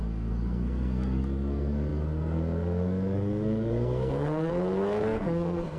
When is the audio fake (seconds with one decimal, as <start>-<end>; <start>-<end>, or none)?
0.0-5.8